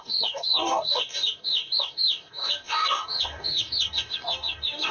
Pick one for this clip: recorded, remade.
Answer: remade